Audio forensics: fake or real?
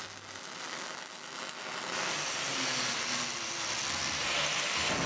real